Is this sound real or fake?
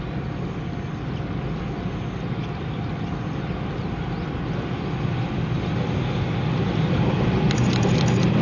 real